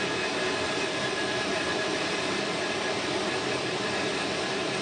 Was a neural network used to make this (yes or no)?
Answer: no